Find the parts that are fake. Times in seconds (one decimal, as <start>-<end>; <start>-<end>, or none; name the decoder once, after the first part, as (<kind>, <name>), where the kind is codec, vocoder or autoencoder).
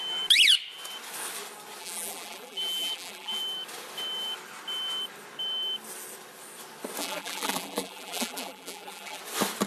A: 1.8-3.4 (vocoder, BigVGAN v2); 7.0-9.2